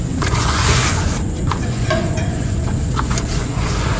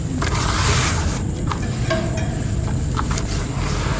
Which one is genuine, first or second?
second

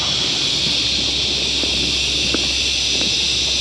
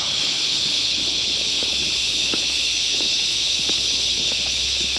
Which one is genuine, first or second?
first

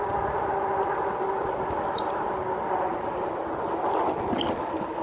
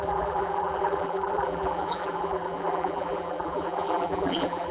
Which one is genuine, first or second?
first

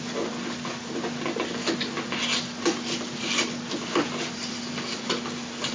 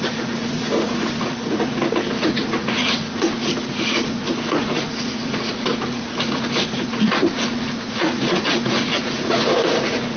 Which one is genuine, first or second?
first